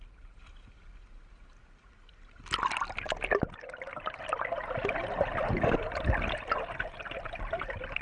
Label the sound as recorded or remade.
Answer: recorded